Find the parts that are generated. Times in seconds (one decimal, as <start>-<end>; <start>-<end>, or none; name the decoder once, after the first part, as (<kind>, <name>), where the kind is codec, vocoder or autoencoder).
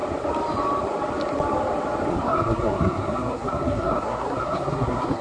2.1-5.2 (codec, SNAC)